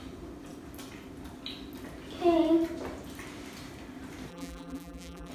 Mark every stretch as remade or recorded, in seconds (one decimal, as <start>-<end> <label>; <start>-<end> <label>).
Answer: 0.0-4.3 recorded; 4.3-5.3 remade

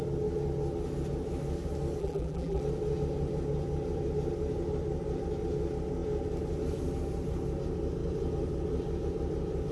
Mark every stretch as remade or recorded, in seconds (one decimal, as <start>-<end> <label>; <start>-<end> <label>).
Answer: 0.0-2.0 recorded; 2.0-2.6 remade; 2.6-9.7 recorded

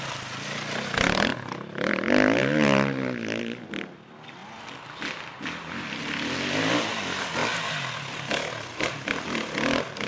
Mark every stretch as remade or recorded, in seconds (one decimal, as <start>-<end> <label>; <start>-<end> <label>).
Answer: 0.0-1.3 remade; 1.3-1.9 recorded; 1.9-4.4 remade; 4.4-5.8 recorded; 5.8-7.4 remade; 7.4-8.7 recorded; 8.7-10.1 remade

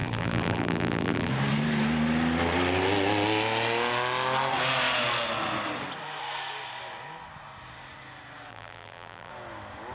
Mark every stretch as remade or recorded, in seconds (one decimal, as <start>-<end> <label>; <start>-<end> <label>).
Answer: 0.0-1.3 remade; 1.3-8.5 recorded; 8.5-9.3 remade; 9.3-9.9 recorded

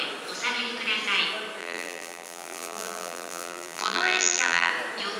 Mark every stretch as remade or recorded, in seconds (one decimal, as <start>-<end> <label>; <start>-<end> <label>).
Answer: 0.0-1.6 recorded; 1.6-4.7 remade; 4.7-5.2 recorded